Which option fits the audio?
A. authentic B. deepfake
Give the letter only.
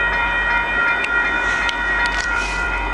B